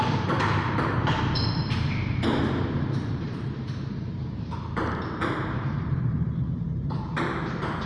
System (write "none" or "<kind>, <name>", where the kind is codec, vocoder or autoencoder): vocoder, BigVGAN v2